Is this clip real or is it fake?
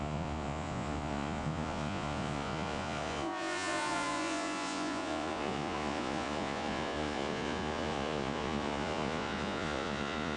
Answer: fake